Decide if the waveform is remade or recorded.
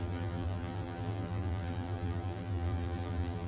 remade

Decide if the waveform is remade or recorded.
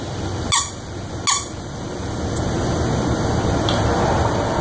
recorded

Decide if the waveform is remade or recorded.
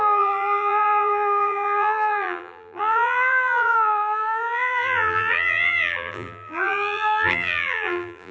remade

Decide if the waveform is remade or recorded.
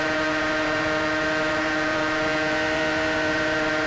remade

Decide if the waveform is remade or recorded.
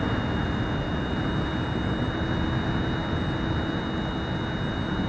recorded